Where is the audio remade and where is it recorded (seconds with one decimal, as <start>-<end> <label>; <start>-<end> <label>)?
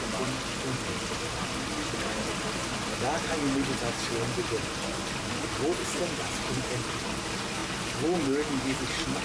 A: 0.0-9.2 recorded